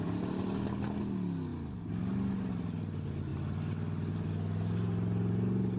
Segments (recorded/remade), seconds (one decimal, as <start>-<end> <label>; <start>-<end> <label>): 0.0-5.8 recorded